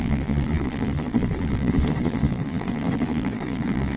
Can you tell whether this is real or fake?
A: fake